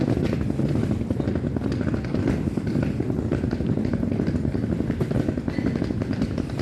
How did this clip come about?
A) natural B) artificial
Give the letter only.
A